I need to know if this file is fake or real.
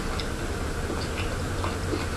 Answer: real